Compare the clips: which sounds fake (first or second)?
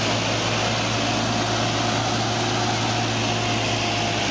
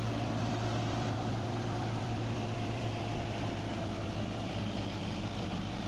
second